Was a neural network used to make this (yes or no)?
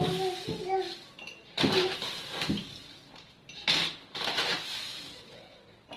no